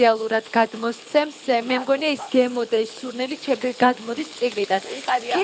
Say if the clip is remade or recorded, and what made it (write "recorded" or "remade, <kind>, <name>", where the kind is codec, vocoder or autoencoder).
remade, codec, HILCodec